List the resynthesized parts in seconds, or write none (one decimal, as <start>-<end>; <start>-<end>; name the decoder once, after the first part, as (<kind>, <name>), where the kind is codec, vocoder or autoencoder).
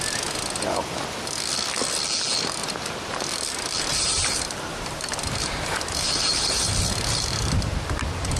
2.6-3.1 (vocoder, BigVGAN v2); 3.9-8.4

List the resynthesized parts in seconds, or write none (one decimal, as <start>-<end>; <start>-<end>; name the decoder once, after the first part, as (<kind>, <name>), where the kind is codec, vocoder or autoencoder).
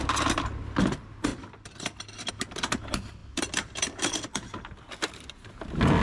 1.3-2.3 (vocoder, BigVGAN v2); 3.2-4.2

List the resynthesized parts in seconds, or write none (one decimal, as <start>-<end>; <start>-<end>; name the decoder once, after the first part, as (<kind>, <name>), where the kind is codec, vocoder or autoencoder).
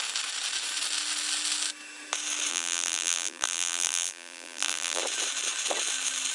2.5-5.0 (vocoder, BigVGAN v2)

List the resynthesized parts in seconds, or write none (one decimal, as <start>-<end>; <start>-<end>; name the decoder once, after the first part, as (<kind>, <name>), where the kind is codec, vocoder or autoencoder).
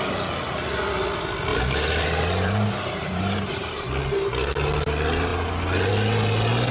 1.5-3.9 (vocoder, BigVGAN v2)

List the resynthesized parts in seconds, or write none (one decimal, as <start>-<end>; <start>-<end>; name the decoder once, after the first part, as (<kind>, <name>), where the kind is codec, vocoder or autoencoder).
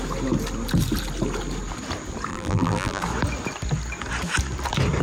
2.3-3.0 (vocoder, BigVGAN v2)